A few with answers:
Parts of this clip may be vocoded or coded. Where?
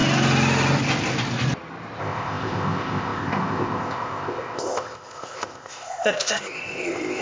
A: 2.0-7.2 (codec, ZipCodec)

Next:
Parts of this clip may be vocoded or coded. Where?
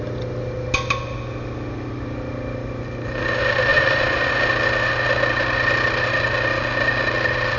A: 3.7-4.3 (vocoder, Vocos)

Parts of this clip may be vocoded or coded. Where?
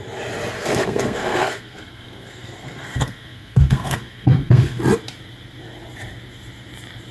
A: 0.5-4.8 (codec, SNAC)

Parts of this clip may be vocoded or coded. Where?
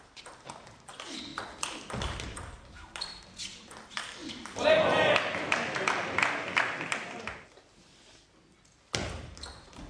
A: none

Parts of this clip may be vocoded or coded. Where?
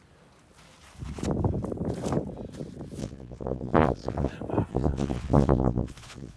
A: 3.0-4.3 (vocoder, Vocos); 4.7-6.4